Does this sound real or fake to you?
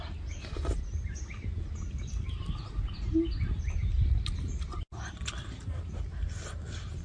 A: real